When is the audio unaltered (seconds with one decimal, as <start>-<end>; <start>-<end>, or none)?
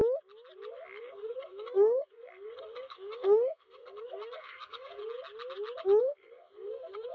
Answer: 0.0-1.0; 5.0-6.0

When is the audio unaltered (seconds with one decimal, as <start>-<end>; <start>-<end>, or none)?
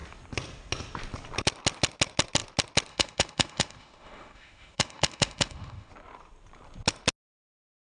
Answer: 0.0-2.9; 5.9-7.9